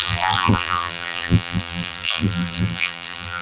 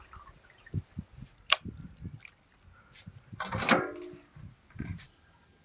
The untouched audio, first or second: second